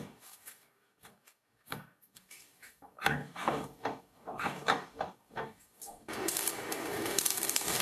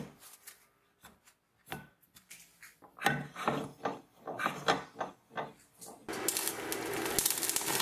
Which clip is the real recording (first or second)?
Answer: second